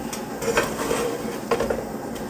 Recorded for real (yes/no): yes